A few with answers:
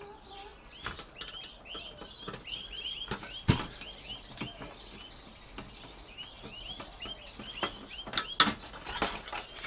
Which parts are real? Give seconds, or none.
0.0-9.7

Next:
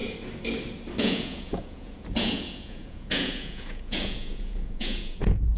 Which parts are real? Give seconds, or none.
0.0-1.0

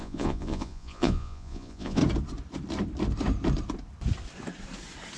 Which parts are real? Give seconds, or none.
2.0-5.2

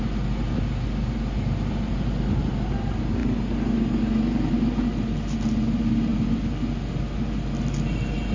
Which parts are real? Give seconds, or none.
0.0-8.3

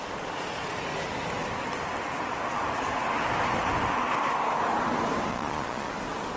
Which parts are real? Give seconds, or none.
0.0-5.3; 5.9-6.4

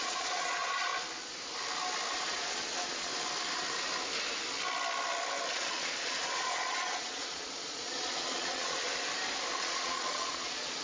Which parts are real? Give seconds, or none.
0.9-2.5; 3.1-5.5; 8.9-9.6